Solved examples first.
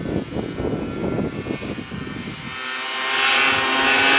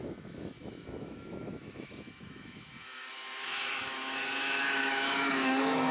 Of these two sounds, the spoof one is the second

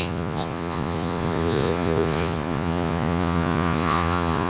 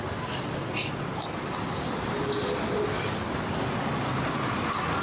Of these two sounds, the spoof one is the first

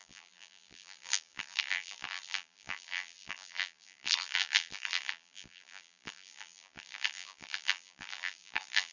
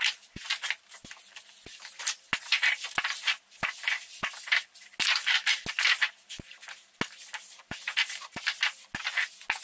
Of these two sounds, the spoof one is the first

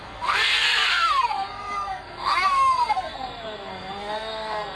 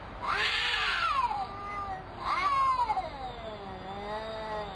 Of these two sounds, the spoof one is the first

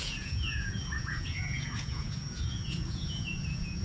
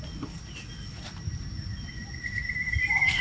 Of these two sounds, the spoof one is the first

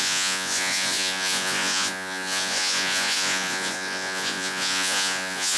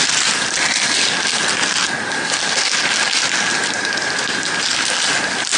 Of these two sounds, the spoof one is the first